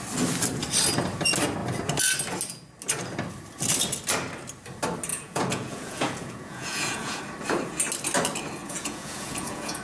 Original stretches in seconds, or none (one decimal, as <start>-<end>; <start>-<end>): 0.0-5.1; 7.2-8.6